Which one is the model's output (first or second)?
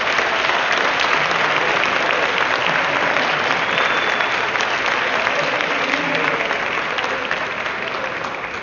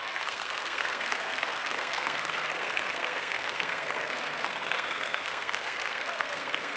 second